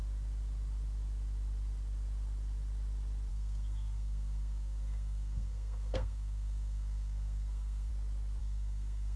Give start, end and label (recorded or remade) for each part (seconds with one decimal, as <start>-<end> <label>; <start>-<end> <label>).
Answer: 0.0-3.3 recorded; 3.3-7.9 remade; 7.9-8.4 recorded; 8.4-9.2 remade